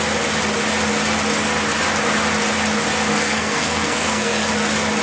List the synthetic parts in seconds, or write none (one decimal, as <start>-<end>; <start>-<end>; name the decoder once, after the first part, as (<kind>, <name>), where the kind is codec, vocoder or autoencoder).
3.1-4.5 (codec, SNAC)